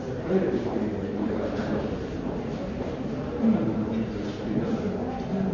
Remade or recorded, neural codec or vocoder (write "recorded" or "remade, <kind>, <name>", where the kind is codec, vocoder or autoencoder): remade, vocoder, BigVGAN v2